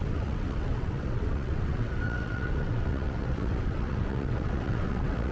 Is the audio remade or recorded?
remade